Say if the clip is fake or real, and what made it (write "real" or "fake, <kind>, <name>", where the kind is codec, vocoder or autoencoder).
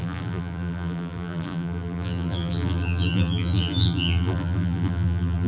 fake, vocoder, BigVGAN v2